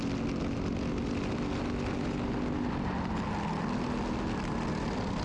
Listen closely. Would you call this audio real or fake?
real